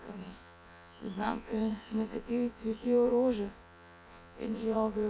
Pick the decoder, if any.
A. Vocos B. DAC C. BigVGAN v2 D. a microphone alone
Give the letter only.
A